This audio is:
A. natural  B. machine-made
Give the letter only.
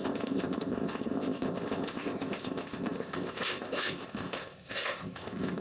B